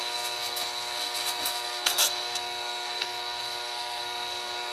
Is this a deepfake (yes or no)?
yes